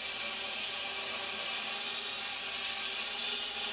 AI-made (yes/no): no